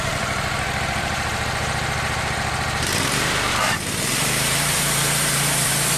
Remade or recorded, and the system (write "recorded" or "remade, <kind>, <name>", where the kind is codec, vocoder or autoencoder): remade, vocoder, BigVGAN v2